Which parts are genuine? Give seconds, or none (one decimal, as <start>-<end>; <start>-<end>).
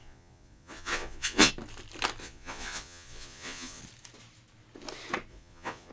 1.5-2.2; 3.8-5.3